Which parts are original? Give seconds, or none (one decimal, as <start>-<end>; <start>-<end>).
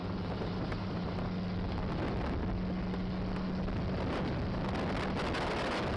1.0-6.0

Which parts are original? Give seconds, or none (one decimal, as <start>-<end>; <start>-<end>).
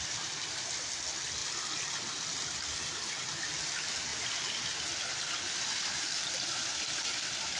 1.4-3.6; 4.1-5.9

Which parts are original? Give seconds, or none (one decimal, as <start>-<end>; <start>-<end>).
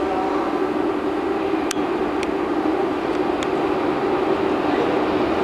0.0-5.4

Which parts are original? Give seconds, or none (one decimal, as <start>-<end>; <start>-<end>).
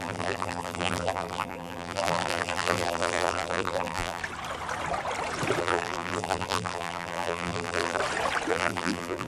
4.2-5.6; 8.0-8.5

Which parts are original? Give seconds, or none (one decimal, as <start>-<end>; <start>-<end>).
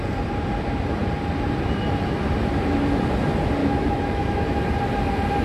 0.0-3.6; 4.6-5.4